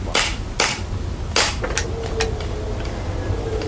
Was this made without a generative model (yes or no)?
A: yes